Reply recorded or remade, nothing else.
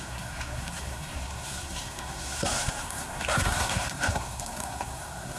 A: remade